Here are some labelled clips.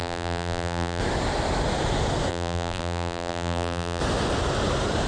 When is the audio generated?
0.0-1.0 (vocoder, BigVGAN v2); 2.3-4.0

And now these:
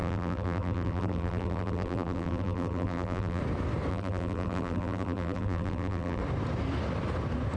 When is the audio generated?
0.0-3.4 (vocoder, BigVGAN v2); 3.9-6.2

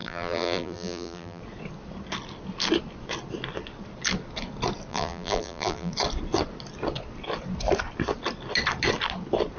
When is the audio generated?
0.0-1.4 (vocoder, BigVGAN v2); 4.9-5.9

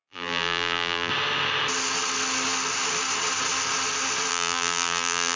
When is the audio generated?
0.0-1.1 (vocoder, BigVGAN v2); 4.3-5.4

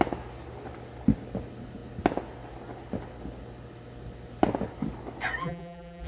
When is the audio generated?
5.4-6.1 (vocoder, BigVGAN v2)

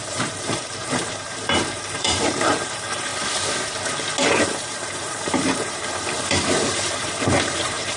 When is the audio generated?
0.0-3.1 (vocoder, BigVGAN v2); 4.4-8.0